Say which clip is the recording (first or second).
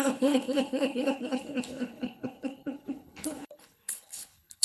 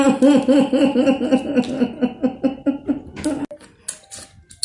second